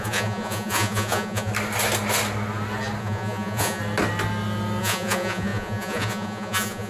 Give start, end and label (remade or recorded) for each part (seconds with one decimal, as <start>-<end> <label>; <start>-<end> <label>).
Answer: 0.0-1.5 remade; 1.5-3.0 recorded; 3.0-3.8 remade; 3.8-4.8 recorded; 4.8-6.9 remade